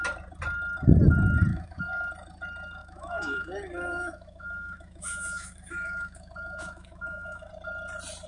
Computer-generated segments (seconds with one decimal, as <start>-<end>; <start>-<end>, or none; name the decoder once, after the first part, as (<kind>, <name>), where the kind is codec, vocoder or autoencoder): 1.5-2.1 (autoencoder, DAC-VAE); 2.8-7.5